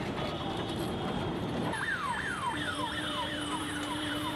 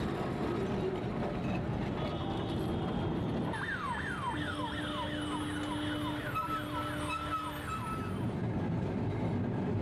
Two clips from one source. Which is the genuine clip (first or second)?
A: second